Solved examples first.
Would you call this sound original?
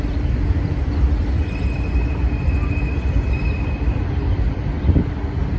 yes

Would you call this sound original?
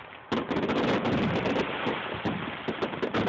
yes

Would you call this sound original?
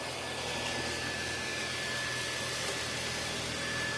yes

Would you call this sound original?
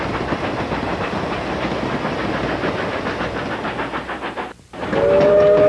yes